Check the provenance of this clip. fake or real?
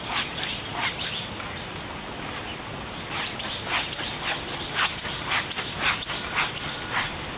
real